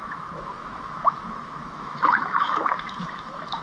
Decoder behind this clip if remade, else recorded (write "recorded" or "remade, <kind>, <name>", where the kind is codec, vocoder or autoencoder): remade, autoencoder, DAC-VAE